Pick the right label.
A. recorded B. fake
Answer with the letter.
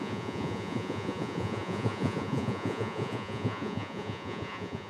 B